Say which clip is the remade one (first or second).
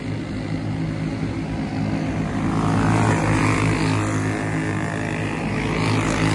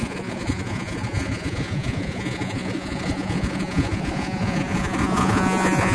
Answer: second